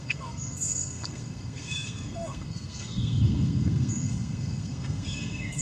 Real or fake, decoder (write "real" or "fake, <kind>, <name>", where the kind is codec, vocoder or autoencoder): fake, codec, SNAC